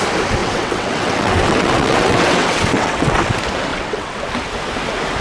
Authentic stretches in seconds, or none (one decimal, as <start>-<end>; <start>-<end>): 0.0-0.4; 3.2-3.7; 4.2-5.2